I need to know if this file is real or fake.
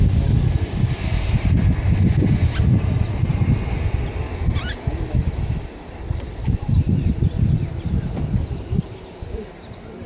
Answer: real